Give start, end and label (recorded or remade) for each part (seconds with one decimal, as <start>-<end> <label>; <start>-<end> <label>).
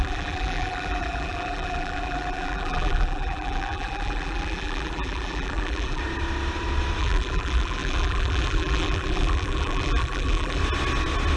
0.0-6.0 remade; 6.0-7.0 recorded; 7.0-10.6 remade; 10.6-11.4 recorded